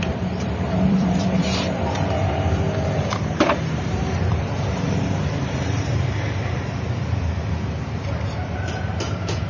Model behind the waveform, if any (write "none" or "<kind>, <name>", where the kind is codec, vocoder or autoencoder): vocoder, BigVGAN v2